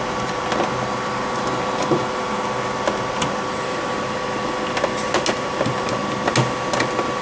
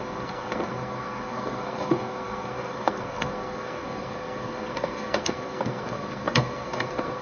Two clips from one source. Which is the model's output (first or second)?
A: second